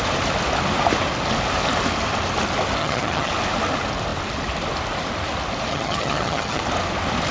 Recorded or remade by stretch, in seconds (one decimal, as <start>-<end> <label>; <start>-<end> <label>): 0.0-2.8 recorded; 2.8-3.3 remade; 3.3-5.7 recorded; 5.7-6.6 remade; 6.6-7.3 recorded